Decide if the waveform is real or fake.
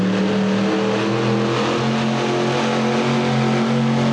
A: real